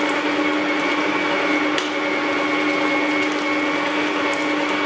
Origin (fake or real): real